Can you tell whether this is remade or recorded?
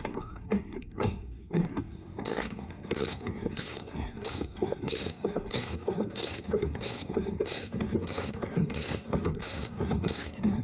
remade